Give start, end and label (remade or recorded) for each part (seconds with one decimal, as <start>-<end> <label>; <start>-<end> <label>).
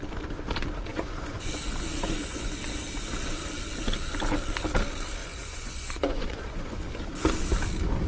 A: 0.0-0.9 recorded; 0.9-1.6 remade; 1.6-2.0 recorded; 2.0-2.6 remade; 2.6-5.2 recorded; 5.2-6.8 remade; 6.8-8.1 recorded